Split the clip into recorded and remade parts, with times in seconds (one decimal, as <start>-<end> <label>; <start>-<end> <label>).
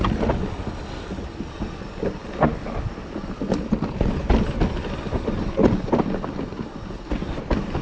0.0-7.8 recorded